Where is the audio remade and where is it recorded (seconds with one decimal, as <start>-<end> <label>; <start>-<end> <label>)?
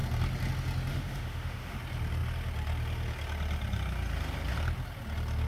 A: 0.0-0.9 recorded; 0.9-1.8 remade; 1.8-5.5 recorded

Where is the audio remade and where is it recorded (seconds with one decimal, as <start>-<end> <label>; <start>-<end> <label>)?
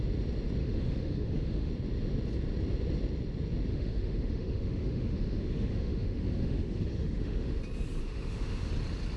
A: 0.0-0.6 recorded; 0.6-1.7 remade; 1.7-3.7 recorded; 3.7-7.6 remade; 7.6-8.0 recorded; 8.0-8.7 remade; 8.7-9.2 recorded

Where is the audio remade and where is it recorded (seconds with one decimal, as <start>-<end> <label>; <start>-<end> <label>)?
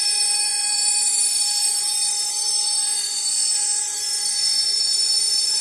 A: 0.0-5.6 remade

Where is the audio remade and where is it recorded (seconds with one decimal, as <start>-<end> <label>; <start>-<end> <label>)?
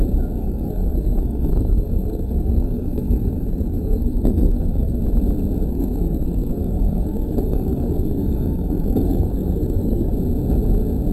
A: 0.0-0.4 recorded; 0.4-5.0 remade; 5.0-5.7 recorded; 5.7-10.1 remade; 10.1-11.1 recorded